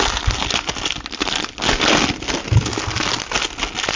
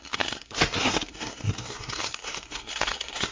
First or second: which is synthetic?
second